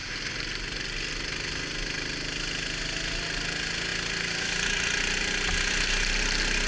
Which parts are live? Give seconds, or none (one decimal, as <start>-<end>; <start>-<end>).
0.0-6.7